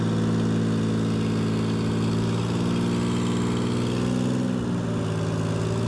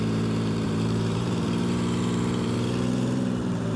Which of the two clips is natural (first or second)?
first